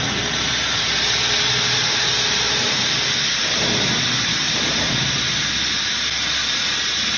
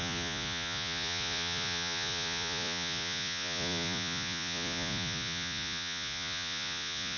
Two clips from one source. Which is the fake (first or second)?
second